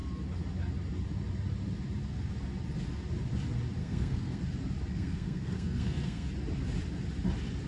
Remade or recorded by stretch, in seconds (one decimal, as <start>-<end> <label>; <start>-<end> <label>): 0.0-3.8 recorded; 3.8-4.4 remade; 4.4-4.9 recorded; 4.9-6.3 remade; 6.3-7.7 recorded